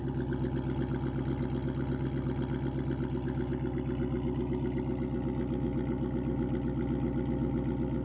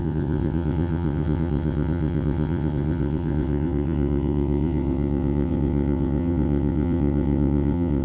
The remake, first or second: second